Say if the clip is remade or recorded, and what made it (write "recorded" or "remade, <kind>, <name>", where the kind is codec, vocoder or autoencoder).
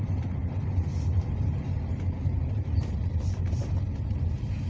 recorded